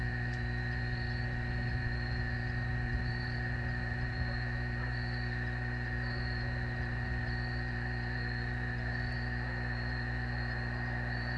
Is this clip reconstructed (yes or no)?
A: yes